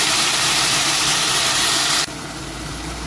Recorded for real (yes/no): no